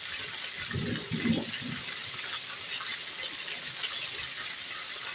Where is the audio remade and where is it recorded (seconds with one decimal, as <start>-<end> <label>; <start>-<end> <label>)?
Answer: 0.0-5.1 recorded